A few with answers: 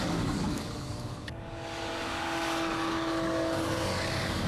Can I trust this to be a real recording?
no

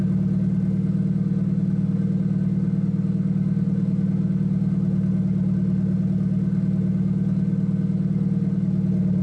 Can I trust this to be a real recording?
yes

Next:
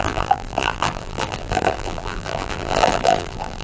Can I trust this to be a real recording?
no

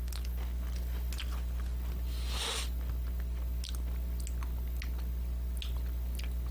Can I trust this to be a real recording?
yes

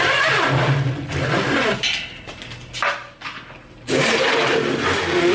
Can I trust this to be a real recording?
yes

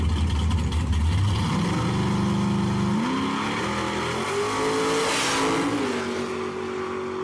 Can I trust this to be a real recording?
yes